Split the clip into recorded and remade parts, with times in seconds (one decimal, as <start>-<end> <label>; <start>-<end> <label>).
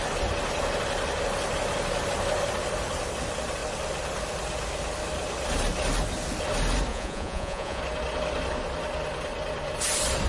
0.0-6.9 recorded; 6.9-7.8 remade; 7.8-10.3 recorded